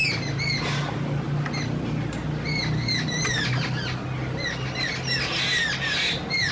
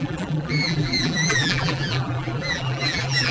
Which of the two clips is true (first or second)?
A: first